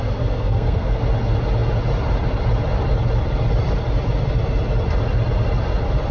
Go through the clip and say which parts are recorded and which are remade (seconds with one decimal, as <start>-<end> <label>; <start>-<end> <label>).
0.0-1.0 remade; 1.0-6.1 recorded